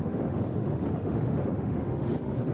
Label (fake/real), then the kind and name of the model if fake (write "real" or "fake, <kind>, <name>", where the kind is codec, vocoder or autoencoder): fake, autoencoder, DAC-VAE